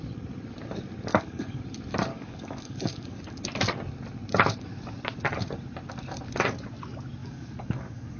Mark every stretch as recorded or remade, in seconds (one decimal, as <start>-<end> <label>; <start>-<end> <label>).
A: 0.0-1.1 recorded; 1.1-1.6 remade; 1.6-2.1 recorded; 2.1-3.4 remade; 3.4-7.2 recorded; 7.2-8.2 remade